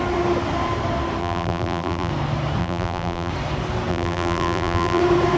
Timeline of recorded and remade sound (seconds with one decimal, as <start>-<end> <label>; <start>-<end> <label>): 0.0-1.2 recorded; 1.2-2.1 remade; 2.1-2.6 recorded; 2.6-3.3 remade; 3.3-3.9 recorded; 3.9-5.0 remade; 5.0-5.4 recorded